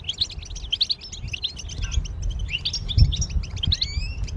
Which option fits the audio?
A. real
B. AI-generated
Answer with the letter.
A